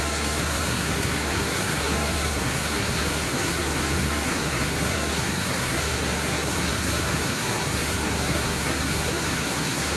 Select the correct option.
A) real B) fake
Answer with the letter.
B